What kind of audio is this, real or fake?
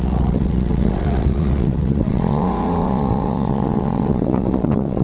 fake